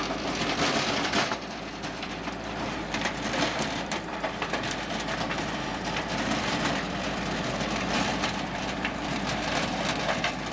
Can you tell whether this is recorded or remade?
remade